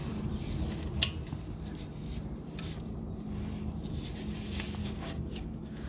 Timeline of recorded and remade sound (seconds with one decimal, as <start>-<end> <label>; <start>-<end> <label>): 0.0-4.8 recorded; 4.8-5.9 remade